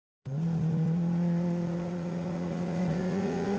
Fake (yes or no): yes